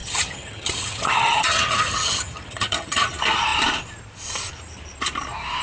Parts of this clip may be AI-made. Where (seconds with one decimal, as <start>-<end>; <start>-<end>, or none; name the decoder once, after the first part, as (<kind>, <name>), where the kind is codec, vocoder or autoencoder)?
0.0-3.1 (vocoder, HiFi-GAN)